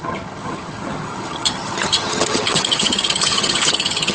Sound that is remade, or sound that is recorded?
remade